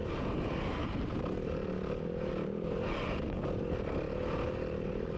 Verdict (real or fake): real